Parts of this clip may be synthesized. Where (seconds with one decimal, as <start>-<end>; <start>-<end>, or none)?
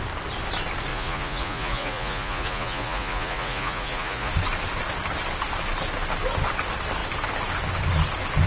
0.9-4.3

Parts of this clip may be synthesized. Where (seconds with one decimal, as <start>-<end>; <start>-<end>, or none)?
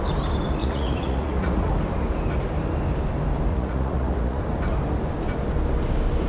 0.6-1.7; 3.5-4.4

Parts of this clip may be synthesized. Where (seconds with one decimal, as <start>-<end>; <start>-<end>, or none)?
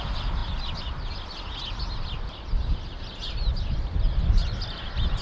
none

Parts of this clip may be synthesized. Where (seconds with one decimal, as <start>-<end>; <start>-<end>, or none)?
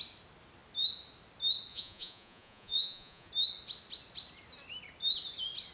1.7-3.3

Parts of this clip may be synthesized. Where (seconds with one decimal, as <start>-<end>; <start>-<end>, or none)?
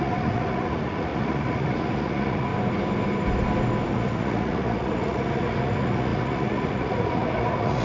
0.0-2.5; 3.9-7.8